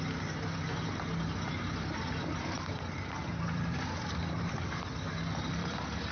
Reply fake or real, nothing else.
real